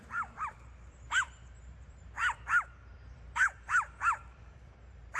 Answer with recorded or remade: remade